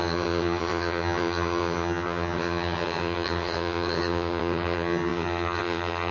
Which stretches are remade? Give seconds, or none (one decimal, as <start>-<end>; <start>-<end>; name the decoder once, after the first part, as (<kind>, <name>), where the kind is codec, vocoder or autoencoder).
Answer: 0.0-6.1 (vocoder, HiFi-GAN)